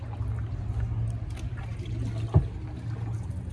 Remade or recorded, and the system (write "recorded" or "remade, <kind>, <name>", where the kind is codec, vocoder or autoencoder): recorded